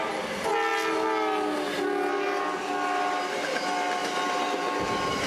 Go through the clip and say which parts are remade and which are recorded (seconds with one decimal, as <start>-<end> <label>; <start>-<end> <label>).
0.0-5.3 recorded